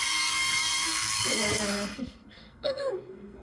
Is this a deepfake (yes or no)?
yes